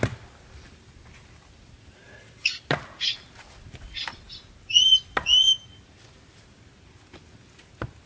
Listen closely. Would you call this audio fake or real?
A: real